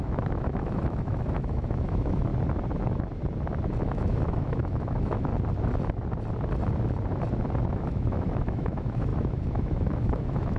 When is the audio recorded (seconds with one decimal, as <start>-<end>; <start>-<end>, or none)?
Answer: 2.3-3.8; 5.3-7.7